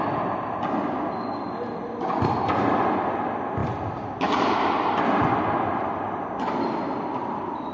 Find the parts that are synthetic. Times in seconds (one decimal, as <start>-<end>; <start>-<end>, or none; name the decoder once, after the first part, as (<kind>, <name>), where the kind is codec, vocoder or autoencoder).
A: none